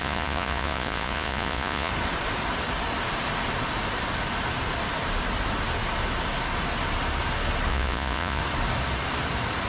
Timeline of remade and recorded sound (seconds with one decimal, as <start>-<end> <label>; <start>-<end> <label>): 0.0-1.9 remade; 1.9-7.7 recorded; 7.7-8.4 remade; 8.4-9.7 recorded